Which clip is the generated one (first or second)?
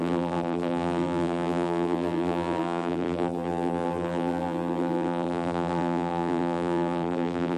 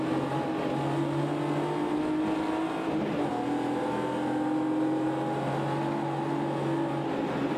first